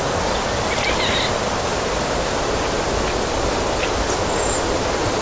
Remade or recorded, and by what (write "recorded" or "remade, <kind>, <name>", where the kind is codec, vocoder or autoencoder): recorded